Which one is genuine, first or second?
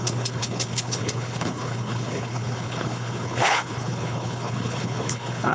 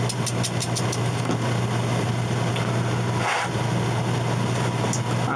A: second